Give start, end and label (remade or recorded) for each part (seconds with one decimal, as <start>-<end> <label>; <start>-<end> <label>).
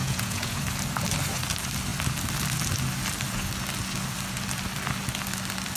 0.0-0.6 remade; 0.6-5.8 recorded